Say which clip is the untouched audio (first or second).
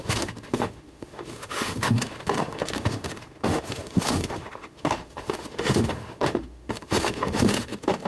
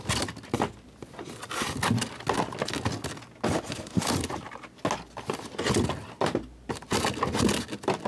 second